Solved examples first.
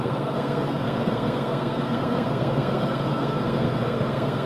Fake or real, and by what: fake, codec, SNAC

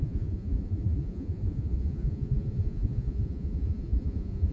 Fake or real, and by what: fake, vocoder, Vocos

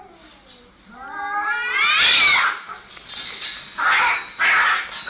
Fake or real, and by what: real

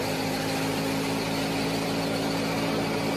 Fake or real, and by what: real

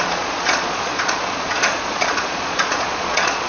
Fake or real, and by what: fake, vocoder, Vocos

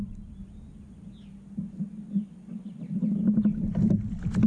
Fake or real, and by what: real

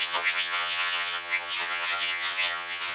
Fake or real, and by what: fake, vocoder, HiFi-GAN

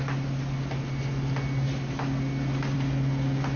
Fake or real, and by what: real